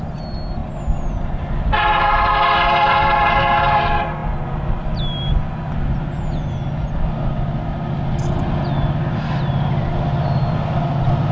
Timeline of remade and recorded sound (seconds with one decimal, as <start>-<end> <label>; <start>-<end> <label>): 0.0-11.3 recorded